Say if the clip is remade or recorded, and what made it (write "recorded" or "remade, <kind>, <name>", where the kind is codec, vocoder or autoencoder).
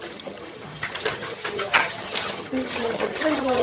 remade, vocoder, HiFi-GAN